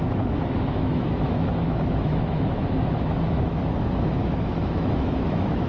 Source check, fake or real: fake